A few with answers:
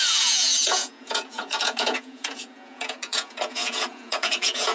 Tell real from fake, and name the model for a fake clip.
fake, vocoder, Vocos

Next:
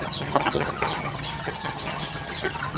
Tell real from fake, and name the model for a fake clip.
fake, vocoder, HiFi-GAN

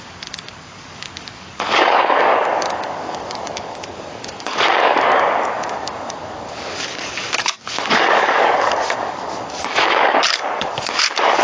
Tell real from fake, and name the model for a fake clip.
fake, codec, DAC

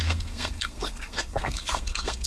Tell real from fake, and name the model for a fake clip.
fake, codec, SNAC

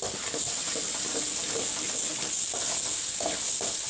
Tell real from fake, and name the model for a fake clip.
real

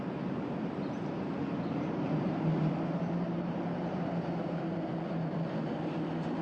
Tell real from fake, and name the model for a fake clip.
fake, vocoder, BigVGAN v2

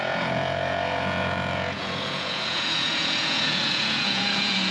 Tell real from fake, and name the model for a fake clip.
fake, vocoder, Vocos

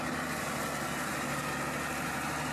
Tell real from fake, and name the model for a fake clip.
real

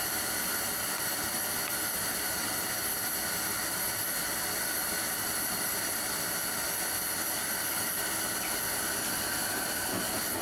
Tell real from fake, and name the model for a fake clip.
real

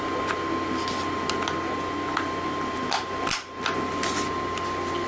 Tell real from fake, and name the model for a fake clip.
real